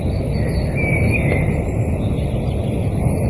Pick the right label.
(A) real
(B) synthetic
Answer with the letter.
A